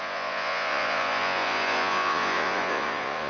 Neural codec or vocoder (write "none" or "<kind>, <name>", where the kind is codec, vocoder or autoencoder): vocoder, Vocos